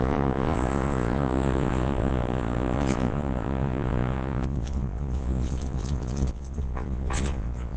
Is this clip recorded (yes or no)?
no